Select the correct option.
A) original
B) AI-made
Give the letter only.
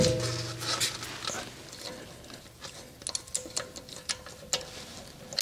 A